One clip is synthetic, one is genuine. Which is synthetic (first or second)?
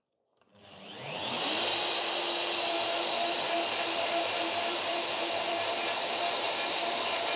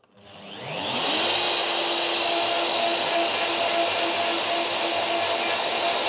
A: first